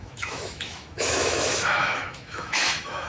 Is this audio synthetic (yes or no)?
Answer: yes